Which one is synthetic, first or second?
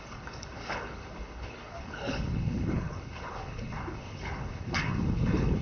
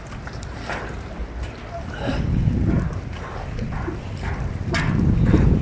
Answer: first